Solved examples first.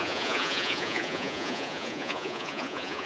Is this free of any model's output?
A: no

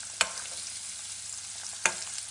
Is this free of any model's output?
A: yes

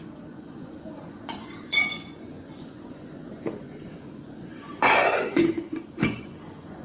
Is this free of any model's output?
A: no